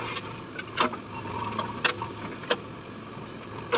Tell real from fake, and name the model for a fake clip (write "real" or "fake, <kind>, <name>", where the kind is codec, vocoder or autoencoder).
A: real